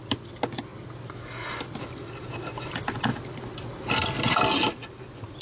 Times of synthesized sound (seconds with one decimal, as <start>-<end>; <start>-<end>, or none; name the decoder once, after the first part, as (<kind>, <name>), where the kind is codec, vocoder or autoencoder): none